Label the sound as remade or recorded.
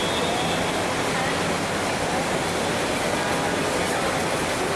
recorded